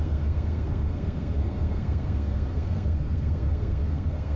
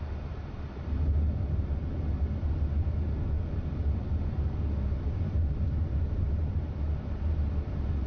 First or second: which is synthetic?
first